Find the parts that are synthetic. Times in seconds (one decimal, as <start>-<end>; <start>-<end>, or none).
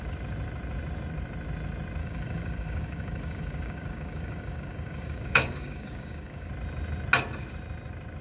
2.0-6.5